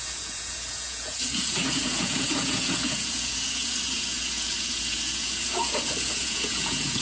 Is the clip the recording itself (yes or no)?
no